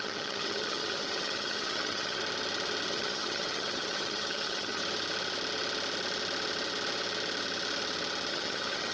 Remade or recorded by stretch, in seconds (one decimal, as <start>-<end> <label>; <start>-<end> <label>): 0.0-2.2 remade; 2.2-2.9 recorded; 2.9-4.8 remade; 4.8-8.3 recorded; 8.3-8.9 remade